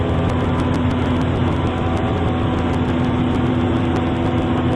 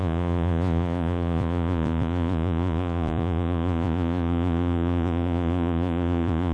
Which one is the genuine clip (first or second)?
first